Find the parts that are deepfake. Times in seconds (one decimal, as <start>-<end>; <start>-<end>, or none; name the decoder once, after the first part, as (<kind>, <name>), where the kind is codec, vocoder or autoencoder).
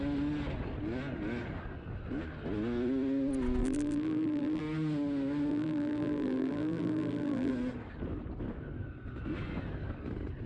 3.6-4.6 (vocoder, BigVGAN v2); 5.5-7.5